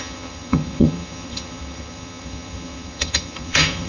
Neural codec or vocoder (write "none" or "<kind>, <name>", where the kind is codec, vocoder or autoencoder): vocoder, HiFi-GAN